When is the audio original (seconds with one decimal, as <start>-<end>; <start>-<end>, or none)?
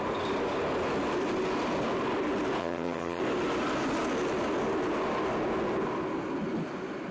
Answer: 0.0-2.6; 3.2-7.1